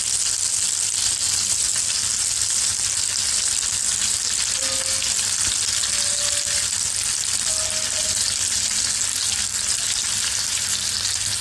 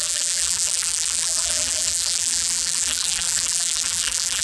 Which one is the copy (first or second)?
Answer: second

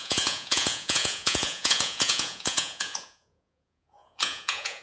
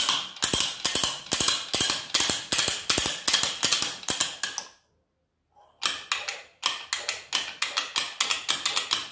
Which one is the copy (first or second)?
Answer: first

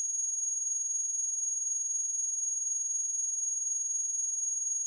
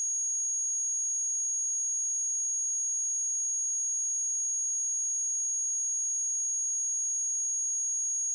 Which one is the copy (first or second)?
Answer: first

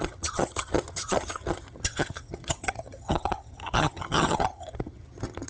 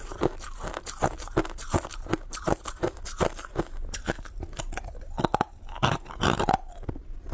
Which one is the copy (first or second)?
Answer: first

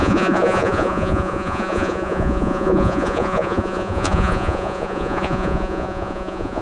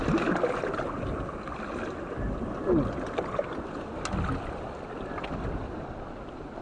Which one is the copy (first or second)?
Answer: first